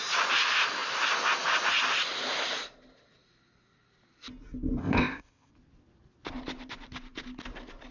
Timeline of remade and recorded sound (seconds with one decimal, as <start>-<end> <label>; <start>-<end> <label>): 0.0-4.8 recorded; 4.8-5.5 remade; 5.5-7.9 recorded